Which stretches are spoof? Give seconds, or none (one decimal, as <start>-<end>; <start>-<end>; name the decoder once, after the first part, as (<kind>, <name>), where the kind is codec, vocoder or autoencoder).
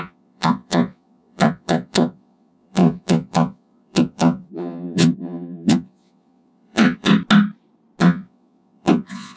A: 0.0-7.1 (vocoder, Vocos); 8.0-9.4